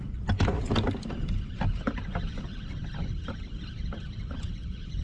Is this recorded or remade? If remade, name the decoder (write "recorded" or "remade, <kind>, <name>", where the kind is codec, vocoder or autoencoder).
recorded